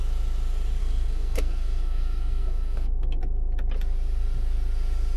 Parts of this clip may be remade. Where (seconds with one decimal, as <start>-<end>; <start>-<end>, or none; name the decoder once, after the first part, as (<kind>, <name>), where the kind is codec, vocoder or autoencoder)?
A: 0.8-3.2 (codec, SNAC)